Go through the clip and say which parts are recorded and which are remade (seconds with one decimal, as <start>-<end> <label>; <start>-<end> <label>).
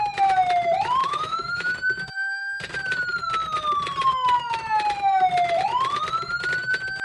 0.0-1.0 recorded; 1.0-1.7 remade; 1.7-7.0 recorded